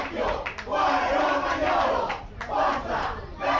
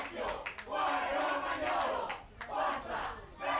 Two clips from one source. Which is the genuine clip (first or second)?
second